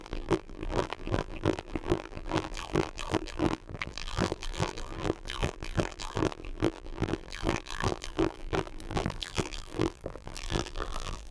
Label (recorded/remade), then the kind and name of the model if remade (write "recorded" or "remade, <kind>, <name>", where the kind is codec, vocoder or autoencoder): remade, vocoder, BigVGAN v2